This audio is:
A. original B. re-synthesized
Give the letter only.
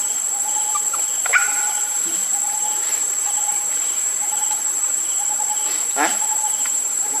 B